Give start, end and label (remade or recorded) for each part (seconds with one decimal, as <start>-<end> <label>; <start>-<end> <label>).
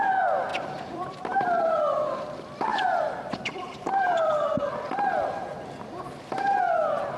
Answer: 0.0-0.5 recorded; 0.5-1.8 remade; 1.8-2.7 recorded; 2.7-4.7 remade; 4.7-7.2 recorded